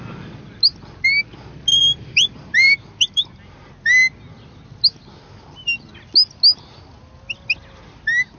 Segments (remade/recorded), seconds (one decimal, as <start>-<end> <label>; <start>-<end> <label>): 0.0-1.7 recorded; 1.7-3.5 remade; 3.5-8.4 recorded